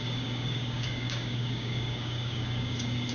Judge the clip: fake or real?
fake